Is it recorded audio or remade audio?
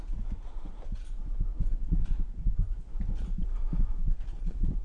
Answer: recorded